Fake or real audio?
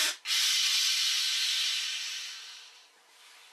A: real